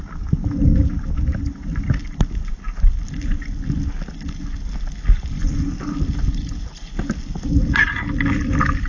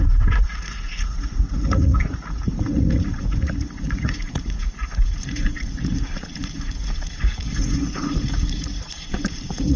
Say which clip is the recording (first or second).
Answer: first